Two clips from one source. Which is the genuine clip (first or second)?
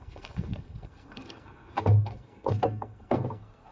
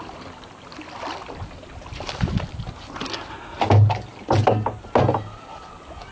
second